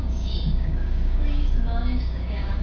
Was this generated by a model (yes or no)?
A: yes